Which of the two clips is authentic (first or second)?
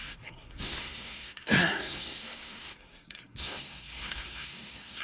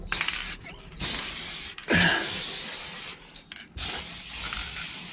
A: second